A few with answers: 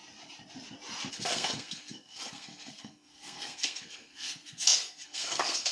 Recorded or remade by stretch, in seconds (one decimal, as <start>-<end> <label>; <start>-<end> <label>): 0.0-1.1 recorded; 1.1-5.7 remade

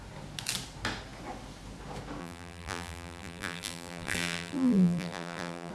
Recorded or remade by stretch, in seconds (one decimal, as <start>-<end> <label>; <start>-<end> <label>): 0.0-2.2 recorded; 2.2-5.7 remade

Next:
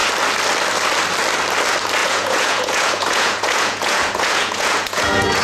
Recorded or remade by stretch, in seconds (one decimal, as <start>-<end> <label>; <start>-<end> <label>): 0.0-2.0 recorded; 2.0-5.4 remade